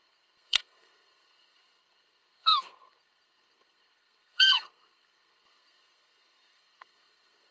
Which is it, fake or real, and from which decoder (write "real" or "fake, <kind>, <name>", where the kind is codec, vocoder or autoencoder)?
fake, codec, SNAC